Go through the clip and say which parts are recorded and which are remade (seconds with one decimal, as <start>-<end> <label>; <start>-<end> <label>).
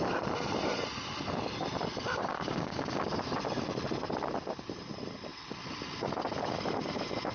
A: 0.0-2.3 recorded; 2.3-3.0 remade; 3.0-7.3 recorded